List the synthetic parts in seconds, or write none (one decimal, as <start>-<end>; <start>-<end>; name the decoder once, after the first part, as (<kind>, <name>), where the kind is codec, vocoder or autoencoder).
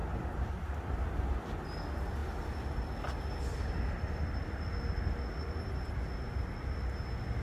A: 0.0-0.5 (vocoder, BigVGAN v2)